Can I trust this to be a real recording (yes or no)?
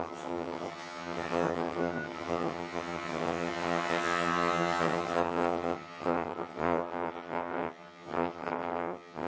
no